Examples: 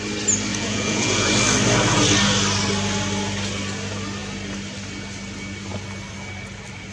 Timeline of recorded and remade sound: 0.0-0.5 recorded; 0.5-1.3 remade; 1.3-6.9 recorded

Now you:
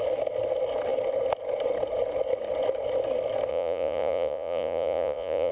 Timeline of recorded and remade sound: 0.0-3.5 recorded; 3.5-5.5 remade

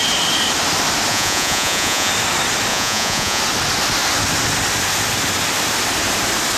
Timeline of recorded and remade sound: 0.0-1.1 recorded; 1.1-2.1 remade; 2.1-2.7 recorded; 2.7-3.4 remade; 3.4-6.6 recorded

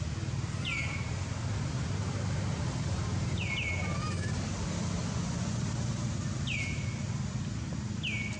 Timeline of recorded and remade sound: 0.0-5.0 recorded; 5.0-5.6 remade; 5.6-8.4 recorded

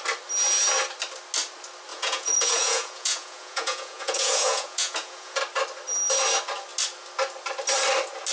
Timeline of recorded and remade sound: 0.0-1.9 recorded; 1.9-5.4 remade; 5.4-8.3 recorded

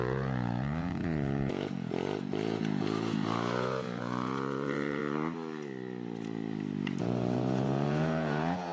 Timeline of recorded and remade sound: 0.0-5.0 remade; 5.0-7.0 recorded; 7.0-8.7 remade